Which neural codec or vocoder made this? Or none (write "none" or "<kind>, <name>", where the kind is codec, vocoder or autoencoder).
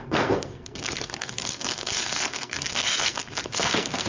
codec, SNAC